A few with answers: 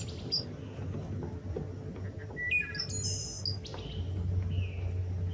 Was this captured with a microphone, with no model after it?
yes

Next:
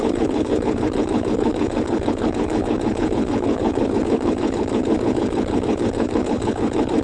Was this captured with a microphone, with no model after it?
no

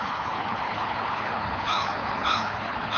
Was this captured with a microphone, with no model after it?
no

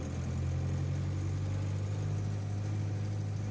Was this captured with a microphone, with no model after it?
yes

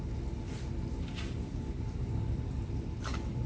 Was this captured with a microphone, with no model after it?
yes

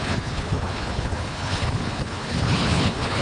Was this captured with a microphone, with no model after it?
no